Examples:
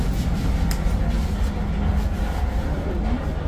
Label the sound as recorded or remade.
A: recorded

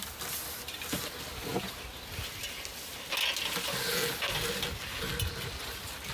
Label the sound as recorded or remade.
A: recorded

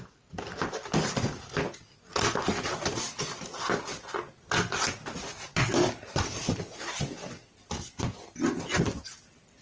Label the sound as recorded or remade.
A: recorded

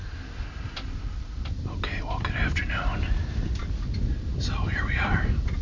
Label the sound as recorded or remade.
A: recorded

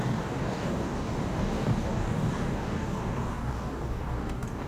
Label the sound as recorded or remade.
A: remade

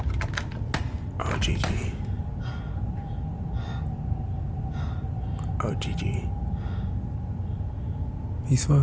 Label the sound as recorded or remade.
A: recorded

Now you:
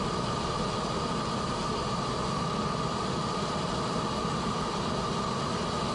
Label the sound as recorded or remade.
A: recorded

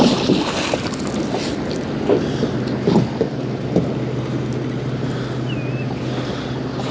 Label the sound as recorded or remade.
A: recorded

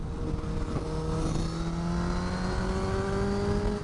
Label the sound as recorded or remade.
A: recorded